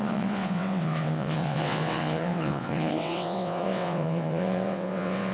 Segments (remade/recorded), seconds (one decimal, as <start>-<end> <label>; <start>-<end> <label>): 0.0-5.3 remade